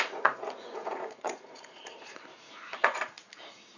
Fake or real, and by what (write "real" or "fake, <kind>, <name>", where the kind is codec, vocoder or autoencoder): fake, vocoder, Vocos